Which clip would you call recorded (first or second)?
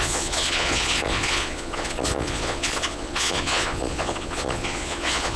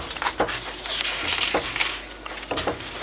second